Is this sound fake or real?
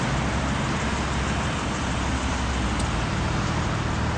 real